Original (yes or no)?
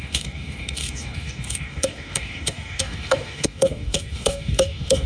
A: no